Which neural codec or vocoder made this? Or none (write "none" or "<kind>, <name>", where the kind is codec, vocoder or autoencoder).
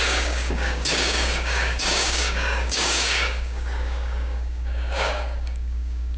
codec, DAC